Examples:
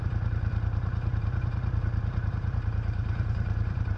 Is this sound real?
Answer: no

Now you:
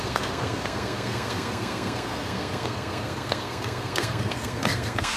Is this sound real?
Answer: no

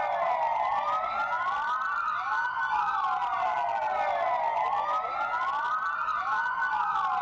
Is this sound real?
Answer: yes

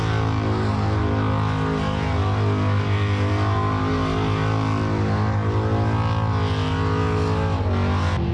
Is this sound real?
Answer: yes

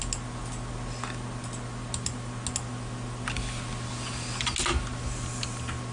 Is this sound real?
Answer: yes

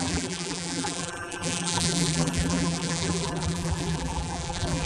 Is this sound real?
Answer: no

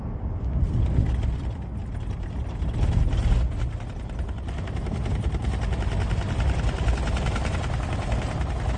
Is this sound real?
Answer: yes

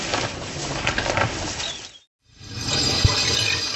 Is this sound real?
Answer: yes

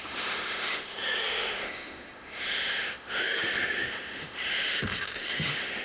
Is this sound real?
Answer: no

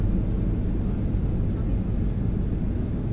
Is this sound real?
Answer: yes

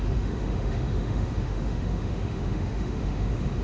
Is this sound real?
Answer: no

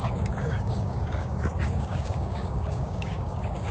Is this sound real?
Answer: no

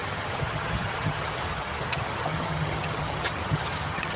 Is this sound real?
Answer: no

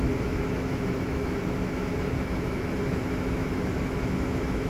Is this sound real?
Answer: no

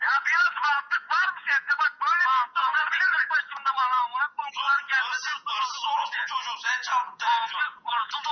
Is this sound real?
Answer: no